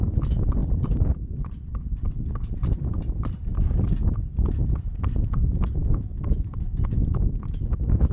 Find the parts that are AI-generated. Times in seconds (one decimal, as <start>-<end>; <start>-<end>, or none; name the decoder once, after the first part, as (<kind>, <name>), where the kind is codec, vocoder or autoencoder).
5.8-8.1 (autoencoder, DAC-VAE)